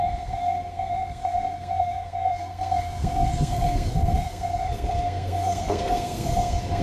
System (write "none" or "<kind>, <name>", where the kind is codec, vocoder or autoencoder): codec, SNAC